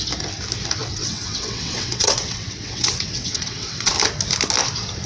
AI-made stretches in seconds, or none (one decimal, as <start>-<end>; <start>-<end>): 0.8-3.9